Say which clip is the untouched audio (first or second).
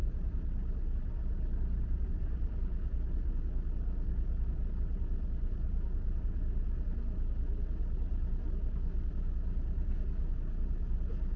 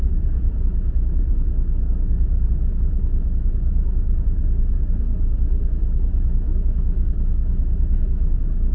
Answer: first